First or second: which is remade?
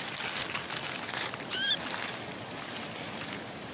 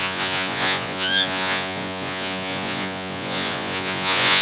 second